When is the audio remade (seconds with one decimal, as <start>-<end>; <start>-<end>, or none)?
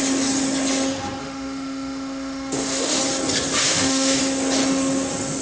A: 1.2-3.0; 3.6-4.2